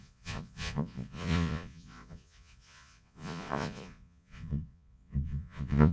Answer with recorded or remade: remade